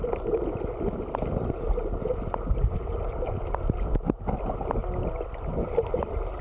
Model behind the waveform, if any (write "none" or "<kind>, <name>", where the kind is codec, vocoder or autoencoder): none